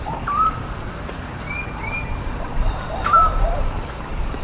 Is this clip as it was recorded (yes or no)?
no